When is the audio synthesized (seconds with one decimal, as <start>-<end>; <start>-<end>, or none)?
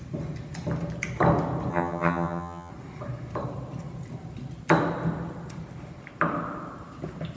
1.7-2.7